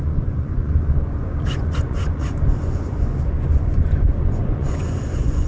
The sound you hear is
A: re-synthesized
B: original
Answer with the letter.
A